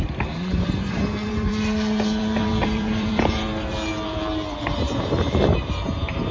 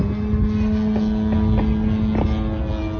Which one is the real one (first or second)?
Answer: second